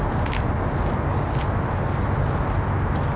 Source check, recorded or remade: recorded